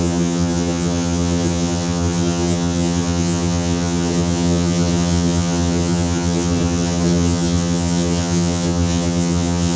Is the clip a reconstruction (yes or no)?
yes